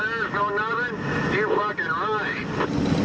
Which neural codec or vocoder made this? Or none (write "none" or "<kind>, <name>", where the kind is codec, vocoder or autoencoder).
none